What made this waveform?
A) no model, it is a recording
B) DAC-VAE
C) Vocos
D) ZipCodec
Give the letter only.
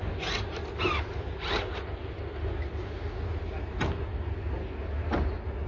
A